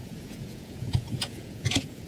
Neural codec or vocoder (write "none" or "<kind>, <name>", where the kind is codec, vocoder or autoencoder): vocoder, Vocos